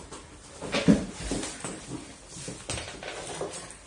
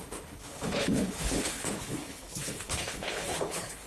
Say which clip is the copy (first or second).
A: second